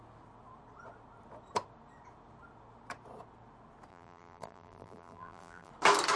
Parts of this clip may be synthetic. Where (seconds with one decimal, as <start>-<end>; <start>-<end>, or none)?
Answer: 3.9-5.7